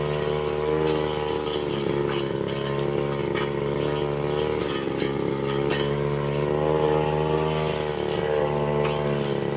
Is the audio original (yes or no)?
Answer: yes